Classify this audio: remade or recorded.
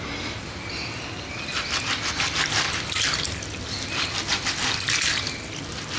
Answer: recorded